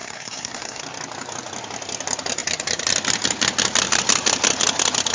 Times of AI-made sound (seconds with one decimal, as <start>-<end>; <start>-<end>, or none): 0.0-0.8